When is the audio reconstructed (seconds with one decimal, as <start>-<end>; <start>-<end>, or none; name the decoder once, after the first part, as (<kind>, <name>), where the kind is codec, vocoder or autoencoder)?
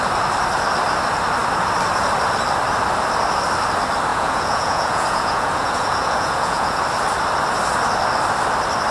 4.1-6.8 (vocoder, Vocos)